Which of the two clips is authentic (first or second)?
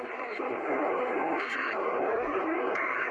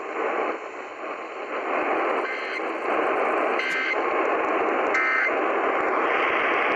second